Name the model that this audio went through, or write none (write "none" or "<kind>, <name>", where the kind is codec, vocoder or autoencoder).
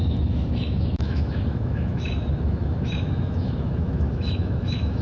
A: autoencoder, DAC-VAE